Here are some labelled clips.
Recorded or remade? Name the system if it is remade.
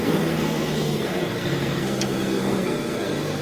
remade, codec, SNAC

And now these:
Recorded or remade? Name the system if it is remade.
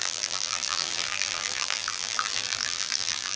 remade, vocoder, BigVGAN v2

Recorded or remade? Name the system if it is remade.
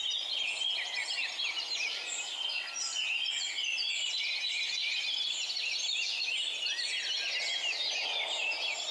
recorded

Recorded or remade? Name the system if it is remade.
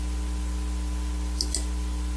recorded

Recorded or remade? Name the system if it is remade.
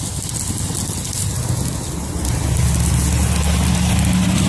recorded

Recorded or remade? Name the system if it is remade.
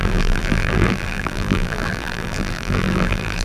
remade, vocoder, BigVGAN v2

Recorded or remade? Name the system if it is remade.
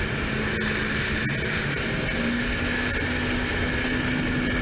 recorded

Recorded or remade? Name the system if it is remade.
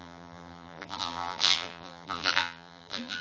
remade, vocoder, BigVGAN v2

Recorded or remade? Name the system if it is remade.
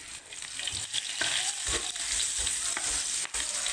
recorded